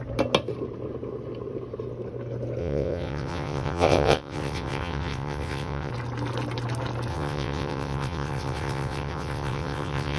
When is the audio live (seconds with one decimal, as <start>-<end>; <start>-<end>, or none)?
0.0-2.6; 5.9-7.1